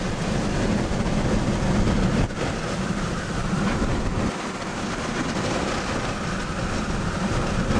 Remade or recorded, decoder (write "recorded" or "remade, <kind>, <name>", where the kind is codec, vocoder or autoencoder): recorded